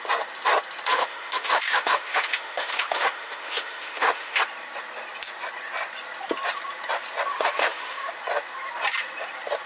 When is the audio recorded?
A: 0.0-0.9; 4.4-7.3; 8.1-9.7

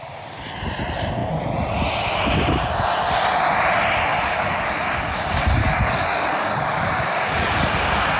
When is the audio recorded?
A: 0.0-4.1; 4.7-5.6

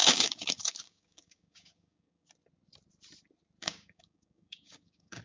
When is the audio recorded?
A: 2.3-3.6

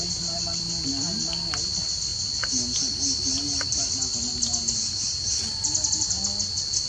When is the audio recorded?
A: 0.0-6.9